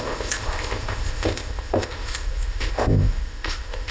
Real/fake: fake